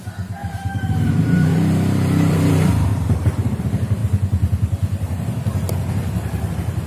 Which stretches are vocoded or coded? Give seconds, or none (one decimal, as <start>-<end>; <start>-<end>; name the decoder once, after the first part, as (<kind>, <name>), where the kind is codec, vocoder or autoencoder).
0.4-1.1 (vocoder, BigVGAN v2); 1.5-2.5; 2.9-3.6